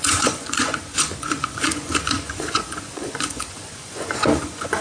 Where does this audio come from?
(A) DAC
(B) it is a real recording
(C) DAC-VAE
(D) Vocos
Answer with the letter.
D